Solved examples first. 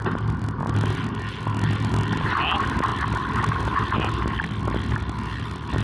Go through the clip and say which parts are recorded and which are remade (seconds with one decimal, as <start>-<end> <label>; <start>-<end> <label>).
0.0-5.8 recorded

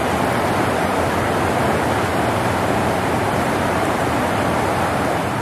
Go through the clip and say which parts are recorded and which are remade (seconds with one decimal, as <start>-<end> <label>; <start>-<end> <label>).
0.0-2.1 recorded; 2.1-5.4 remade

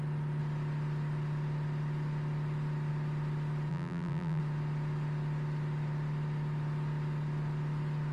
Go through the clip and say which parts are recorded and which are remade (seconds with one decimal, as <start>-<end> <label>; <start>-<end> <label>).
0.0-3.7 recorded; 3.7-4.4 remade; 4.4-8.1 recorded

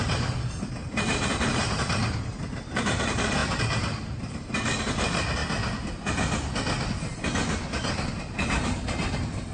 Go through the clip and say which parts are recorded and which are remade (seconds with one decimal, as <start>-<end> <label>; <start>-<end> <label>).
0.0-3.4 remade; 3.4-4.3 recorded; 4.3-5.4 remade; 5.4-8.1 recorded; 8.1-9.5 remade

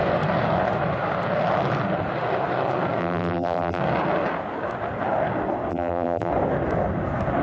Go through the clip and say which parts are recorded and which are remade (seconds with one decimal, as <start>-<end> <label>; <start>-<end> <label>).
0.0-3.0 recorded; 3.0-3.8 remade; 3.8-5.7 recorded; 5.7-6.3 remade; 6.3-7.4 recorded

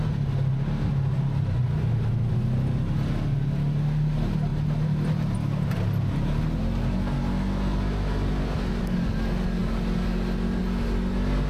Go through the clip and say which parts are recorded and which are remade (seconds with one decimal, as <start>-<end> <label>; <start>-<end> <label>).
0.0-11.5 recorded

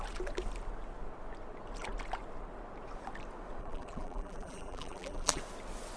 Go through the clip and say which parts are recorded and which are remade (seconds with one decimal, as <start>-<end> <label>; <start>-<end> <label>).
0.0-3.6 recorded; 3.6-5.4 remade; 5.4-6.0 recorded